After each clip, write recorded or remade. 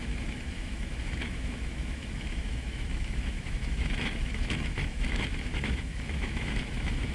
remade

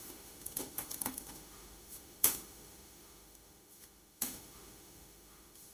remade